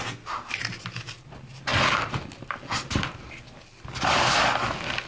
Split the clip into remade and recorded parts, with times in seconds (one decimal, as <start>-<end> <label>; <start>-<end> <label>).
0.0-5.1 recorded